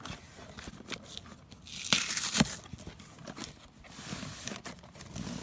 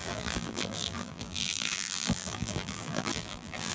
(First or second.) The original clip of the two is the first